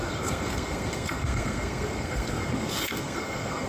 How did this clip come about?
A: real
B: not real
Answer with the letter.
B